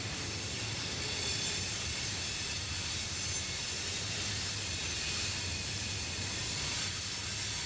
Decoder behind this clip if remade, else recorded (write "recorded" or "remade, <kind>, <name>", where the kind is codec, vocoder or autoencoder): recorded